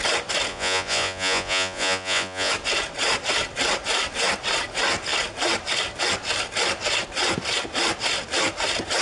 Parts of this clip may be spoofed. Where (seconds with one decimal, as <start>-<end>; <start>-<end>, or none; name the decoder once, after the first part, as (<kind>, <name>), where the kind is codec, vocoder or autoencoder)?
0.5-2.5 (vocoder, Vocos)